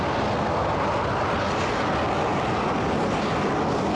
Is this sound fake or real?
real